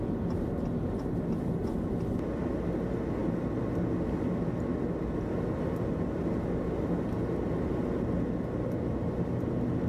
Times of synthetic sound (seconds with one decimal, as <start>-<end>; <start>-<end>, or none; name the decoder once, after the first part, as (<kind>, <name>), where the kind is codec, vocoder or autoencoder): none